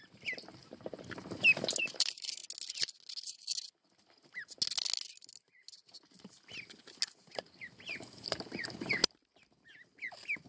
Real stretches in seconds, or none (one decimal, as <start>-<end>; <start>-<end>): 0.6-1.8; 2.4-7.4; 9.0-10.5